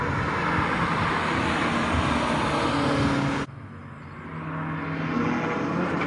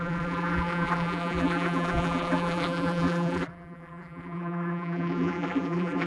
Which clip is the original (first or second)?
first